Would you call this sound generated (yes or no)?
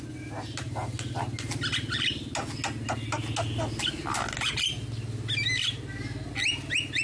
no